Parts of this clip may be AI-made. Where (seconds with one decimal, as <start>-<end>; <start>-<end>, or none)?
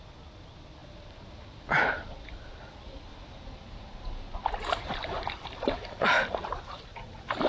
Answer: 0.8-2.7; 3.1-6.8